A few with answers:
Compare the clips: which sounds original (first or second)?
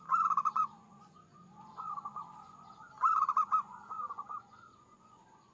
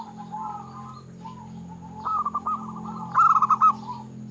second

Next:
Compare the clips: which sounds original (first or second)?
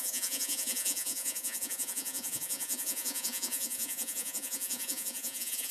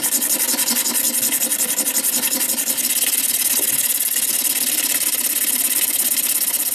second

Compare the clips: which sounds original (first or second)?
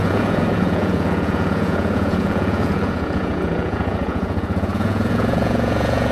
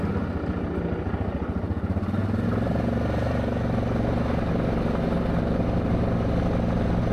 second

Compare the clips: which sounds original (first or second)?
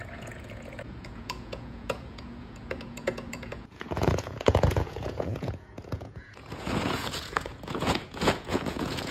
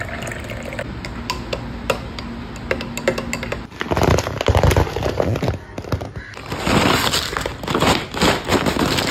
second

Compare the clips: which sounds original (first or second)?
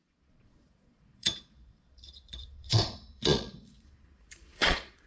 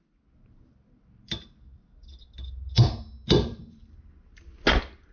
second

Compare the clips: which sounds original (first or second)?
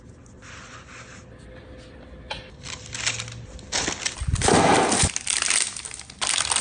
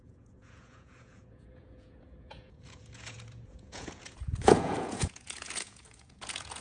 first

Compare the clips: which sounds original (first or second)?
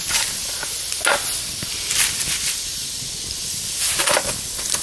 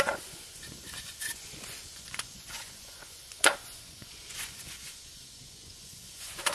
first